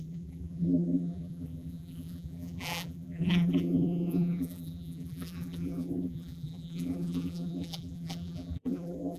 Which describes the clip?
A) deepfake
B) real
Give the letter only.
A